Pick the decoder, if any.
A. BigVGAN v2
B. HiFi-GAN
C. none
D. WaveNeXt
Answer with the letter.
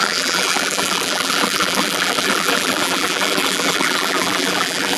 A